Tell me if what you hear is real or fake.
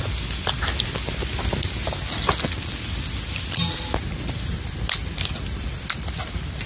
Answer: real